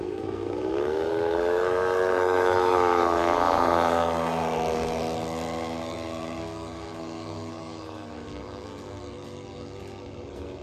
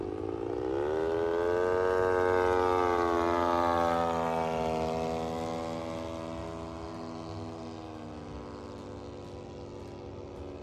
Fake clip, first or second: first